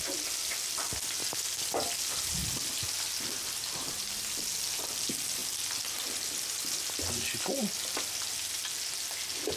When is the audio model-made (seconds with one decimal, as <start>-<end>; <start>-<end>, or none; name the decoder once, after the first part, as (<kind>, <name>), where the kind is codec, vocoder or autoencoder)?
none

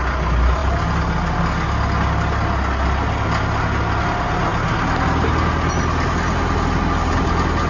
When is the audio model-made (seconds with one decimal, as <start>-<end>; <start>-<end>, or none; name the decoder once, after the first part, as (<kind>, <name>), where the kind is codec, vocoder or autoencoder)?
none

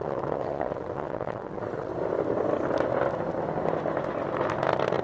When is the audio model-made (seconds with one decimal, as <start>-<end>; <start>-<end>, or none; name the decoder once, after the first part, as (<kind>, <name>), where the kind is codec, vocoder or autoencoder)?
0.0-1.9 (vocoder, WaveNeXt)